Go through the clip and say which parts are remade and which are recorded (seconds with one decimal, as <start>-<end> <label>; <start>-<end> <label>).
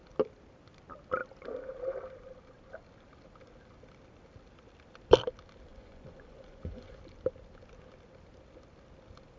0.0-5.7 recorded; 5.7-7.0 remade; 7.0-9.4 recorded